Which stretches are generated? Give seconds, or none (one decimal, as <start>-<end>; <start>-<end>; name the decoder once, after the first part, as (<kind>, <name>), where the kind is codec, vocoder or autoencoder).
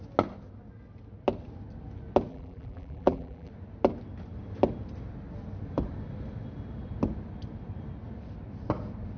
2.3-3.5 (vocoder, BigVGAN v2)